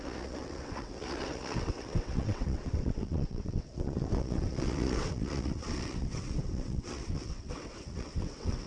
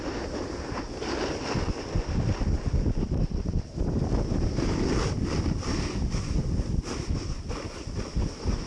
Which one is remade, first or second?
first